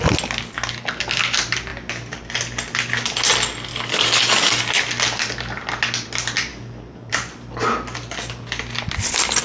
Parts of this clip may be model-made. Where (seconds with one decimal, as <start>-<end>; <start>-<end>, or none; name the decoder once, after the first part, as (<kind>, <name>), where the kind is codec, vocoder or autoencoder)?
3.7-4.8 (codec, DAC); 6.5-7.1